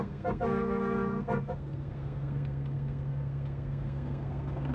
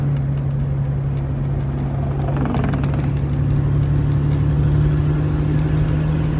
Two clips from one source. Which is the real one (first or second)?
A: second